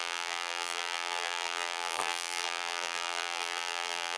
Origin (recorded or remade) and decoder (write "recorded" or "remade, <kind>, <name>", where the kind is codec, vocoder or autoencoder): remade, vocoder, BigVGAN v2